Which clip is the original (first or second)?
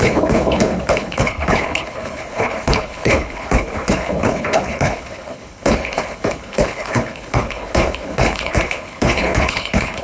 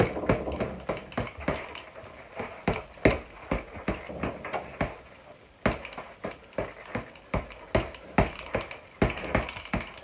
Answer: second